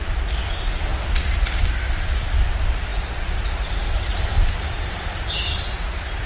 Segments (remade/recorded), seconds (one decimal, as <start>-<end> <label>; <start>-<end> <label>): 0.0-0.9 recorded; 0.9-2.5 remade; 2.5-4.1 recorded; 4.1-5.6 remade; 5.6-6.3 recorded